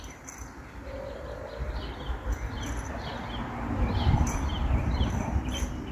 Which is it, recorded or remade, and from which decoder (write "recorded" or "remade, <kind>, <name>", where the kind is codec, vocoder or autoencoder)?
recorded